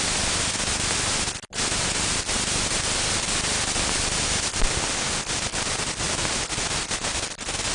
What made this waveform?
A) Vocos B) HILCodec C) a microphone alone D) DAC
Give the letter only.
C